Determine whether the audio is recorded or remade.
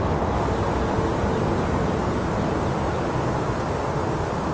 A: recorded